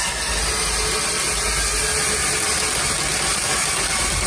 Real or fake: real